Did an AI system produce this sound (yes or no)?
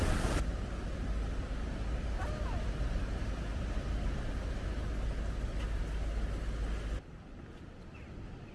no